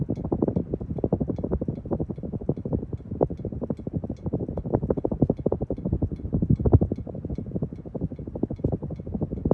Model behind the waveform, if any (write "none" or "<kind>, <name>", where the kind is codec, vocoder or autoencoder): none